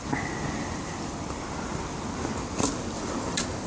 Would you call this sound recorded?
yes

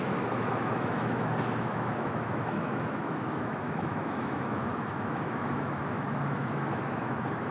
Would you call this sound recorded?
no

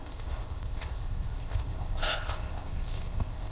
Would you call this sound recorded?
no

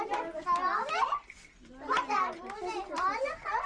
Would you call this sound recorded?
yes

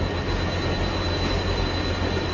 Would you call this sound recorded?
yes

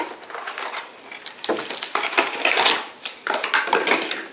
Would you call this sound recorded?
yes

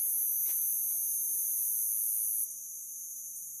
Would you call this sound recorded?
yes